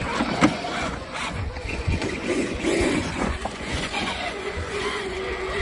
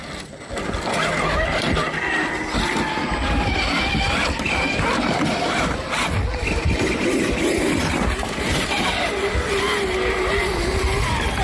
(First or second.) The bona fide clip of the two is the second